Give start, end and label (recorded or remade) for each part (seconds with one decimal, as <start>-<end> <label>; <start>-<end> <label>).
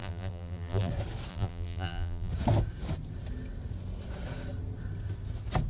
0.0-0.9 remade; 0.9-1.3 recorded; 1.3-2.3 remade; 2.3-5.7 recorded